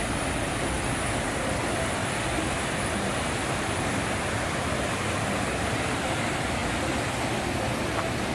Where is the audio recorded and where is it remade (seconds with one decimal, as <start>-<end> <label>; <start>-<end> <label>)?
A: 0.0-8.3 recorded